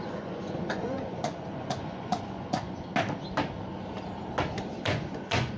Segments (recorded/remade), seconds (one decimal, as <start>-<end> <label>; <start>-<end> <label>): 0.0-2.9 remade; 2.9-4.8 recorded; 4.8-5.6 remade